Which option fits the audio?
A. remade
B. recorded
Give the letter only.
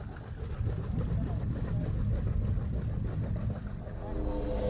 B